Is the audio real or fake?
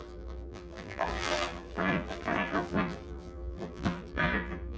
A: fake